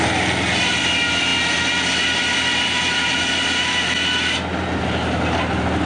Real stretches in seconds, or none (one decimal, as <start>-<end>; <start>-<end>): 0.0-5.9